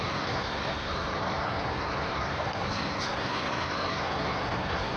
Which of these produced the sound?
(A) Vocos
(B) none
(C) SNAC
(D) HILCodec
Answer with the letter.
C